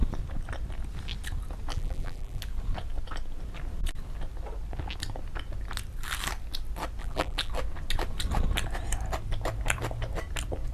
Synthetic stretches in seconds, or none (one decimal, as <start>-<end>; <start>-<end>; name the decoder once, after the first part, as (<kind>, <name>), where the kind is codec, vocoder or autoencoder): 1.7-2.4 (vocoder, BigVGAN v2); 7.0-7.5